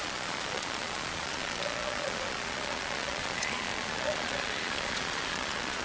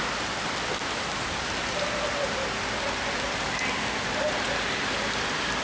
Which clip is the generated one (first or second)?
first